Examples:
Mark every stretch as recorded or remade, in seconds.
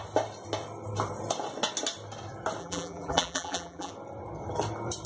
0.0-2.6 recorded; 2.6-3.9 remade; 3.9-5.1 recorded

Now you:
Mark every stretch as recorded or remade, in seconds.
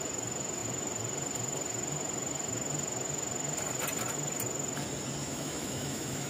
0.0-5.2 recorded; 5.2-6.3 remade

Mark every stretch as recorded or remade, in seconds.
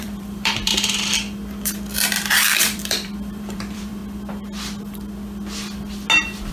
0.0-0.7 remade; 0.7-2.3 recorded; 2.3-4.0 remade; 4.0-6.5 recorded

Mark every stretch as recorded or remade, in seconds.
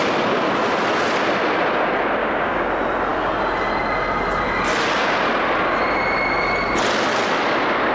0.0-2.2 recorded; 2.2-2.7 remade; 2.7-7.9 recorded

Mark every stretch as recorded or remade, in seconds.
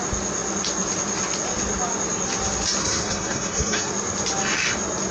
0.0-2.8 recorded; 2.8-3.9 remade; 3.9-5.1 recorded